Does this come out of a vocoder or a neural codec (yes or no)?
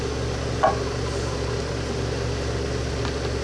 no